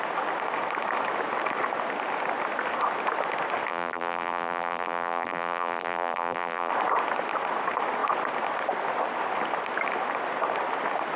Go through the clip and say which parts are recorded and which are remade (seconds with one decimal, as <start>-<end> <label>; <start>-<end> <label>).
0.0-3.7 recorded; 3.7-6.7 remade; 6.7-11.2 recorded